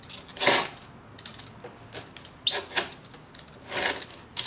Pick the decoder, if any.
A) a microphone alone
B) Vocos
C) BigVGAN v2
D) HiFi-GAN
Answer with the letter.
A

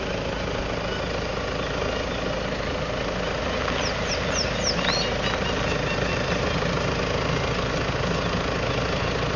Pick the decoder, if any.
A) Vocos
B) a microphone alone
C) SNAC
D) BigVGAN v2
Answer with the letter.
B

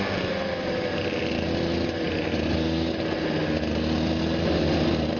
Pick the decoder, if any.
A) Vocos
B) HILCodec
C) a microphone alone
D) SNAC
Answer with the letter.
C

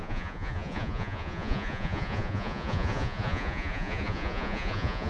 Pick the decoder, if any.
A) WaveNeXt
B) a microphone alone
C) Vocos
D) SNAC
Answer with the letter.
C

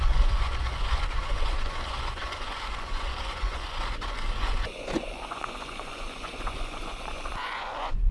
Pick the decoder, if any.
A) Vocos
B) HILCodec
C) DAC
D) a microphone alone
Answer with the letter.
A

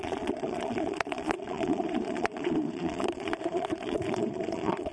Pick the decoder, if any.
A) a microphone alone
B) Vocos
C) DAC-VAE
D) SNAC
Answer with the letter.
B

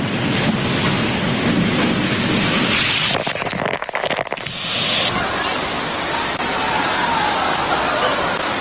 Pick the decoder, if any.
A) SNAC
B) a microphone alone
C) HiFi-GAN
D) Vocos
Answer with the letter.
B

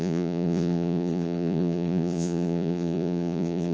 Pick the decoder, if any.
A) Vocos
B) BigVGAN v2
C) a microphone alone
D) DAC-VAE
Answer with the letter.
A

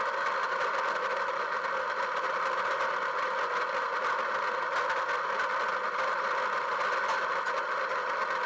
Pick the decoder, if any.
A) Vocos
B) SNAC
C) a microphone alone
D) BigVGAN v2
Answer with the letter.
C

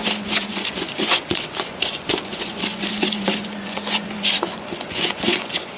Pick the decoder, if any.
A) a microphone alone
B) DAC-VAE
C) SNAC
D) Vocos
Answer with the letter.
D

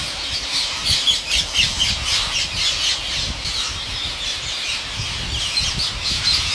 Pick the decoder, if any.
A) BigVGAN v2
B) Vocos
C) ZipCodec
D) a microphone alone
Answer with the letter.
D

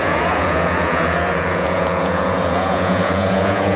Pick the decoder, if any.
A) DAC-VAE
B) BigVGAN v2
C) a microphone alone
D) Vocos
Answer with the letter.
D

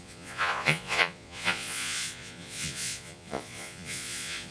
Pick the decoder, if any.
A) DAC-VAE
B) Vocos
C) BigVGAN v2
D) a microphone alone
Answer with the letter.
B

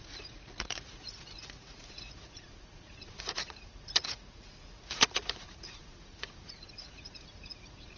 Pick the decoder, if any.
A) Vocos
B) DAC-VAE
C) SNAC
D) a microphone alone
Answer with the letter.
A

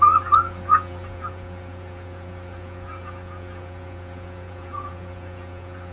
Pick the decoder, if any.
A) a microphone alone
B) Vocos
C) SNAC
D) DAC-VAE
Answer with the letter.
B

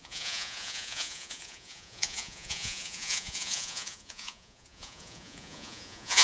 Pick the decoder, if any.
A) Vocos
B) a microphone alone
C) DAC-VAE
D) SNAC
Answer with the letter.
A